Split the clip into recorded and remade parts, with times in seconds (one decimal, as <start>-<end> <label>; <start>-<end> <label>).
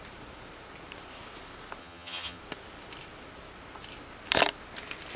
0.0-1.8 recorded; 1.8-2.4 remade; 2.4-5.2 recorded